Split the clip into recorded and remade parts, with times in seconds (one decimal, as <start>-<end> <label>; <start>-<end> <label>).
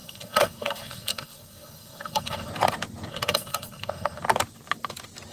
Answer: 0.0-2.5 remade; 2.5-3.1 recorded; 3.1-4.2 remade; 4.2-5.3 recorded